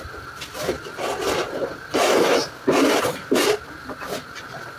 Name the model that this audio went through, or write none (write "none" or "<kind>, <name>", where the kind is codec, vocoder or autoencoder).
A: none